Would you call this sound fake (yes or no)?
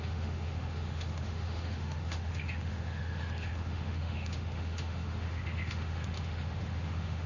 yes